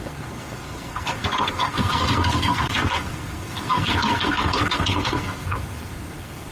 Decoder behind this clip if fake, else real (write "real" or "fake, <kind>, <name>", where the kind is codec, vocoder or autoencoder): fake, codec, SNAC